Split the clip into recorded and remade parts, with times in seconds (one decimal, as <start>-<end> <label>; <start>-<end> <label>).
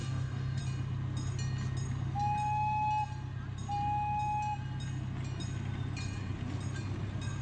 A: 0.0-0.6 remade; 0.6-7.4 recorded